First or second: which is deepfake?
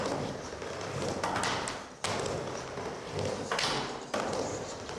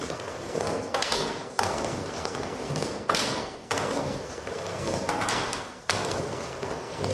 second